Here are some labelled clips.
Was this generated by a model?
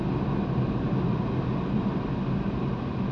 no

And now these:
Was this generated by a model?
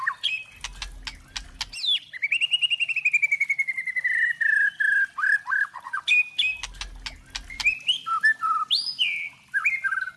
no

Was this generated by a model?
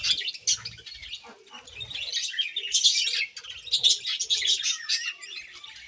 no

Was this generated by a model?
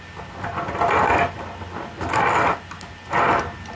no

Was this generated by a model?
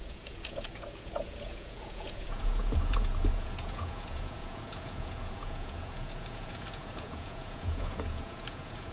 yes